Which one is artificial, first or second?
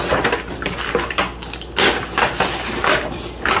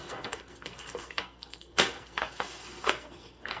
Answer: second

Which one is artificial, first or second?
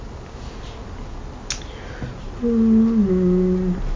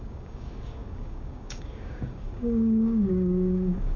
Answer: second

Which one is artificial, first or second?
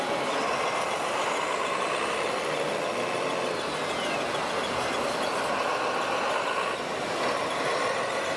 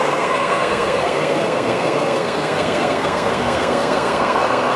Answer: second